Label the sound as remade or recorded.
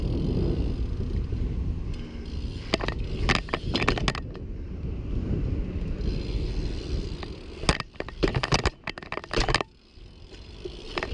recorded